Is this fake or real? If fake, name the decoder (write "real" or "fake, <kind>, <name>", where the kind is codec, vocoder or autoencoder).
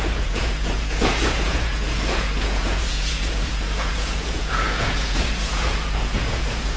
fake, vocoder, Vocos